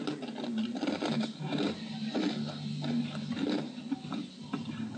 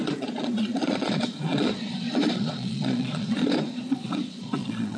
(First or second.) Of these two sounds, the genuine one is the first